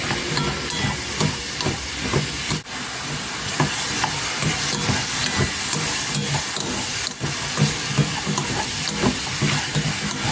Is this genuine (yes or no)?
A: yes